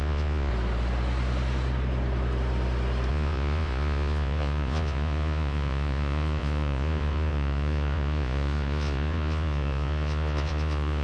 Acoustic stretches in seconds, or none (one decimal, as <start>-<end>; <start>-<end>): 0.5-3.1